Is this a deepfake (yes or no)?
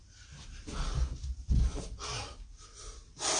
no